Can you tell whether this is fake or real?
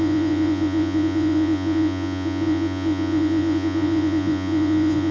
fake